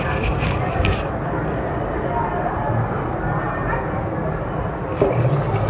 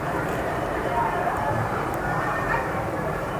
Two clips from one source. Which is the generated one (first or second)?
second